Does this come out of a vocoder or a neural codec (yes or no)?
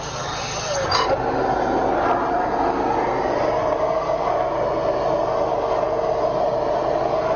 no